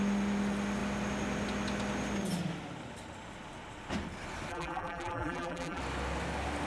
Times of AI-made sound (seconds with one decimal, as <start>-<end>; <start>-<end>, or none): 4.5-5.8